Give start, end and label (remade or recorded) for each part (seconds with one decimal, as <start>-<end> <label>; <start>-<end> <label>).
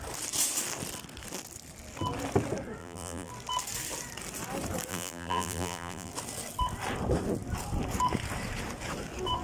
0.0-2.8 recorded; 2.8-3.3 remade; 3.3-4.9 recorded; 4.9-6.1 remade; 6.1-9.4 recorded